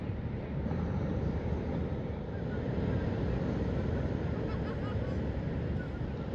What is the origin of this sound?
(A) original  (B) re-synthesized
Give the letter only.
A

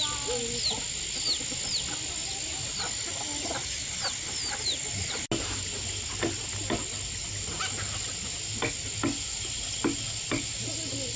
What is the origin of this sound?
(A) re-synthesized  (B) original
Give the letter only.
B